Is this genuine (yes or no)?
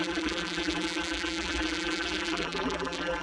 no